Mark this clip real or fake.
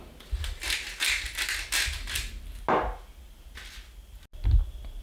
real